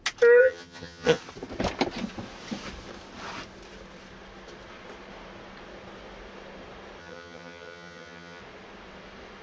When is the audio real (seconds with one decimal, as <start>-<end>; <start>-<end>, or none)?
0.0-0.4; 1.2-7.0; 8.4-9.4